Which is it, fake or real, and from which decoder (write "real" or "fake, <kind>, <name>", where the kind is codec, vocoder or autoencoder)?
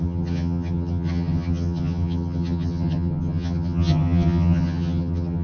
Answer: fake, vocoder, HiFi-GAN